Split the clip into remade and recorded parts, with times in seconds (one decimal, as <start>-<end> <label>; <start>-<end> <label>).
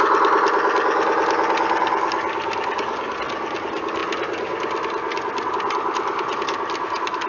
0.0-7.3 recorded